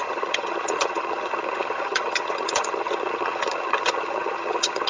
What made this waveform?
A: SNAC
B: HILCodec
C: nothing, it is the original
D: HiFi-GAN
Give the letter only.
D